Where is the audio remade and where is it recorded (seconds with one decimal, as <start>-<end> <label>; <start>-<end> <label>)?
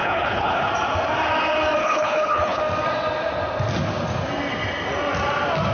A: 0.0-0.7 remade; 0.7-1.8 recorded; 1.8-2.6 remade; 2.6-5.7 recorded